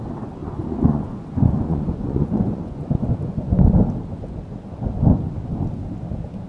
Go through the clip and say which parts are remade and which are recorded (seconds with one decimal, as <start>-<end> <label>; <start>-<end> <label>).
0.0-0.4 recorded; 0.4-3.7 remade; 3.7-6.5 recorded